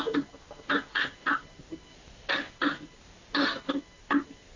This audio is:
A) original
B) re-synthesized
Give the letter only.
A